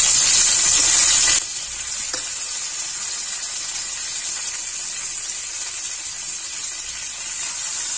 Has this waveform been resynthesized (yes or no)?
no